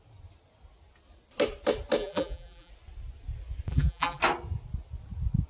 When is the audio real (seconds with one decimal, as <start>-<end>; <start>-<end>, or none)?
0.0-2.0; 2.7-3.7; 4.2-5.5